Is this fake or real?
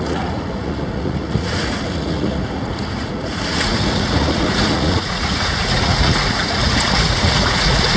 fake